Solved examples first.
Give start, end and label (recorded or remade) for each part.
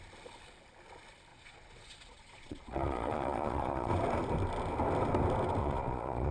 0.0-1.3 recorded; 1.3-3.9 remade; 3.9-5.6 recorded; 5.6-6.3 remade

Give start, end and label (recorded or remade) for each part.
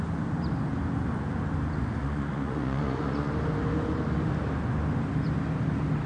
0.0-2.0 recorded; 2.0-3.3 remade; 3.3-6.1 recorded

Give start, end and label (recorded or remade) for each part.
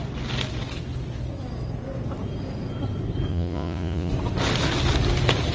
0.0-3.3 recorded; 3.3-4.1 remade; 4.1-5.5 recorded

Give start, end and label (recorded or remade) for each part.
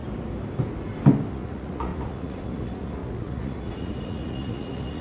0.0-1.3 recorded; 1.3-5.0 remade